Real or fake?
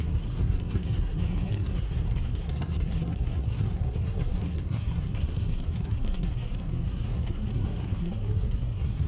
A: fake